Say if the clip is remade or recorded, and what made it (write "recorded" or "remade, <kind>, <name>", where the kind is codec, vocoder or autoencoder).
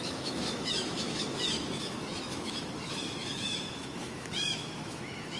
remade, autoencoder, DAC-VAE